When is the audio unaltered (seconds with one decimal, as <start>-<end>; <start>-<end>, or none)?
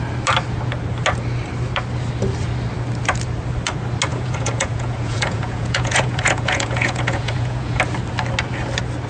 0.0-4.1; 7.8-9.1